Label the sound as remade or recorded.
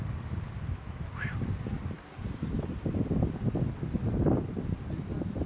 recorded